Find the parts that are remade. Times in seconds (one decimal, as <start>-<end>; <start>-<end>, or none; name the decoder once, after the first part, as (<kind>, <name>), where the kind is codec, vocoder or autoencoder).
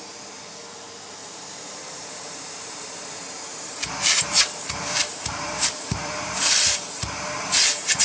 1.2-2.9 (vocoder, BigVGAN v2); 3.5-8.0